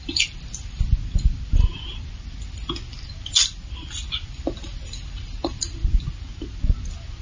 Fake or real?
real